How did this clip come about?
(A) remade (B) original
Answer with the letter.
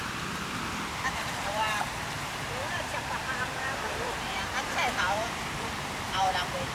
A